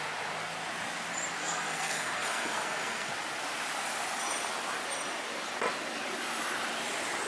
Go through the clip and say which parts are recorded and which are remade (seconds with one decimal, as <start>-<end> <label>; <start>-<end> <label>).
0.0-1.4 recorded; 1.4-3.1 remade; 3.1-7.3 recorded